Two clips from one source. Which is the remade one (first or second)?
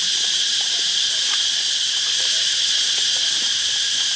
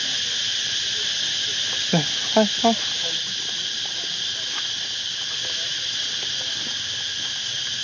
first